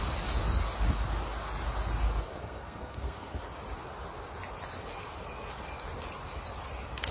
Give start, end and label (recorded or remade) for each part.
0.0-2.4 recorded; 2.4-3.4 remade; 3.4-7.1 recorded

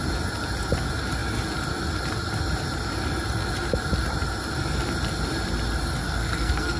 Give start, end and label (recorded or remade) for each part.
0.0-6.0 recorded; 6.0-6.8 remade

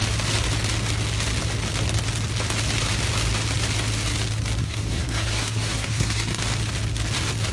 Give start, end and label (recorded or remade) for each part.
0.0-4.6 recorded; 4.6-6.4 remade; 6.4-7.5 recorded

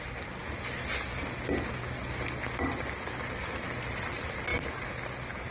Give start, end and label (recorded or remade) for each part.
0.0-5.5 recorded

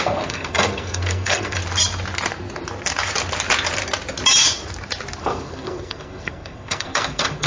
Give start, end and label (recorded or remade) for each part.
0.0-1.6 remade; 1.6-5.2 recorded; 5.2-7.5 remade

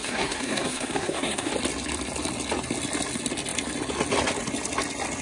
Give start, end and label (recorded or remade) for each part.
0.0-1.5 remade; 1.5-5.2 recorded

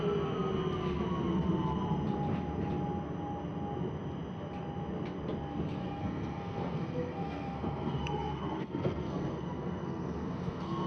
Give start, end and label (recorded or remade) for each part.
0.0-5.8 recorded; 5.8-10.9 remade

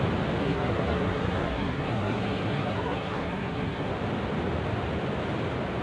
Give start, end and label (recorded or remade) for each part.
0.0-0.4 recorded; 0.4-3.9 remade; 3.9-5.8 recorded